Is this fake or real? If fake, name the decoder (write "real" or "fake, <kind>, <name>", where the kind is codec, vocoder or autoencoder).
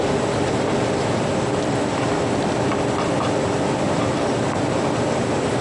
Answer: real